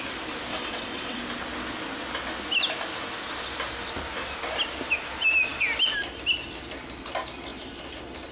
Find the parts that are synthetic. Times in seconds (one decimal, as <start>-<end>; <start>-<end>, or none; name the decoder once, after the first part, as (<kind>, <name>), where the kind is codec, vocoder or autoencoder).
0.5-1.2 (vocoder, WaveNeXt)